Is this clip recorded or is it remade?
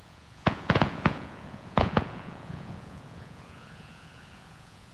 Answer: remade